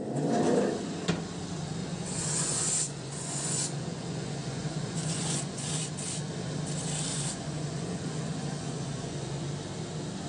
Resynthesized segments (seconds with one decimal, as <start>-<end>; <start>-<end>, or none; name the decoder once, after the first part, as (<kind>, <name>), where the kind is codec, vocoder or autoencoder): 1.8-5.9 (vocoder, Vocos); 7.1-9.5